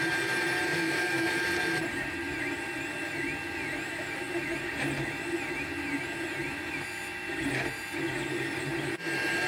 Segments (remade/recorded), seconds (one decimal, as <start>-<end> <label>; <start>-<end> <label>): 0.0-0.7 recorded; 0.7-1.4 remade; 1.4-9.5 recorded